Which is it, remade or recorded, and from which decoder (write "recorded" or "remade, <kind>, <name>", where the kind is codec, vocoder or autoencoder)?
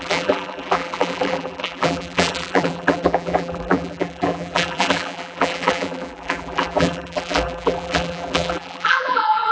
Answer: remade, vocoder, BigVGAN v2